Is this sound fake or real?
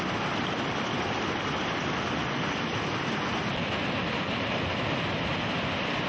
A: real